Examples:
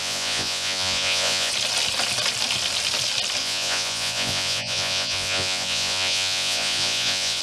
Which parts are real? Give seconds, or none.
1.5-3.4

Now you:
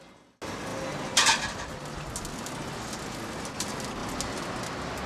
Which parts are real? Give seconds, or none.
0.0-5.1

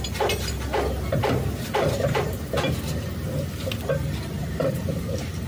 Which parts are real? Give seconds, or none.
0.0-1.2; 3.3-4.4; 5.1-5.5

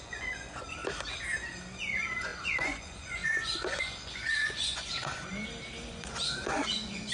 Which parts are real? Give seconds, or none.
0.8-1.8; 5.3-5.9

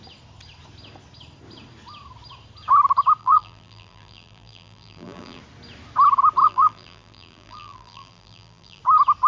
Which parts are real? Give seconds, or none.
0.0-3.2; 5.4-6.4; 8.8-9.3

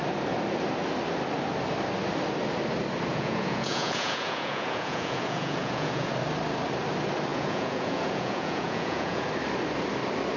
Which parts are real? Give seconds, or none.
0.0-3.1; 6.1-7.3; 9.3-10.4

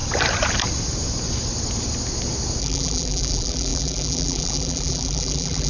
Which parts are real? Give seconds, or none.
0.0-2.6